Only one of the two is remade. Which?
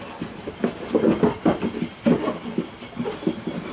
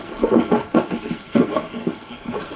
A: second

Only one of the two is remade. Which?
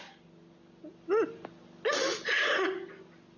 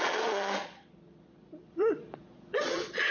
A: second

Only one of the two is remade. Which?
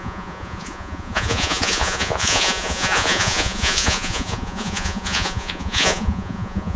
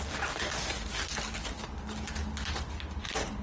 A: first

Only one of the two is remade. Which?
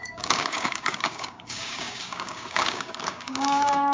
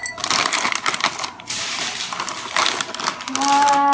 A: first